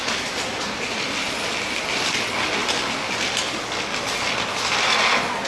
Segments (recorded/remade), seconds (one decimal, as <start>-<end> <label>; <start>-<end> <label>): 0.0-5.5 recorded